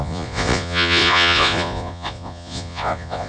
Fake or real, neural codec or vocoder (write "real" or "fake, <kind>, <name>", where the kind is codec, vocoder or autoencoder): fake, vocoder, Vocos